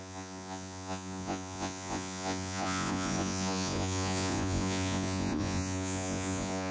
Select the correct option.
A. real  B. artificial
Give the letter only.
B